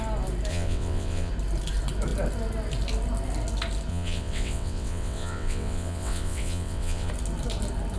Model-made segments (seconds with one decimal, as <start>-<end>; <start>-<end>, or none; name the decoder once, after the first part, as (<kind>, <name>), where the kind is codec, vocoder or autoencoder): 0.5-1.3 (vocoder, WaveNeXt); 3.9-7.1